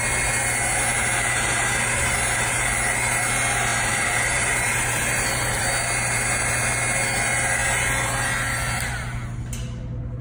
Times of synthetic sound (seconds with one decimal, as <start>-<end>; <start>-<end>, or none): 3.7-5.6